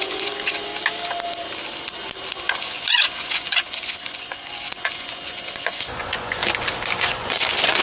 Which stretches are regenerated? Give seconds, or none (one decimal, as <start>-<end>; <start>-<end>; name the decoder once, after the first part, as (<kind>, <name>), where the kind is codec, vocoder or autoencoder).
0.0-0.7 (vocoder, Vocos); 2.5-6.4; 7.0-7.8